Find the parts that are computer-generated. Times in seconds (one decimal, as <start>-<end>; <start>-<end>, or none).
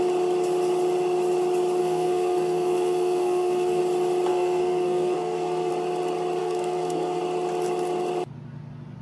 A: 1.8-3.8; 4.3-5.7; 6.4-7.2